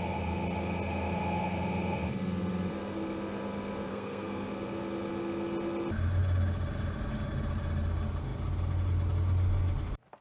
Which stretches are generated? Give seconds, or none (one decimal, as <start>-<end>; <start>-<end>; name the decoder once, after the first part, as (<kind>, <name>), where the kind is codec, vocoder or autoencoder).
3.9-4.5 (codec, SNAC)